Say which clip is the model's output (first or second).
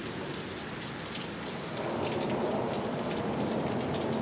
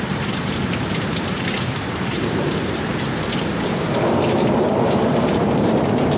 second